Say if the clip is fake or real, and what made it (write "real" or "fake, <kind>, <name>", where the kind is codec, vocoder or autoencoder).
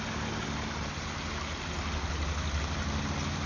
real